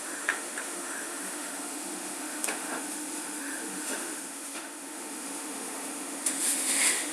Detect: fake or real fake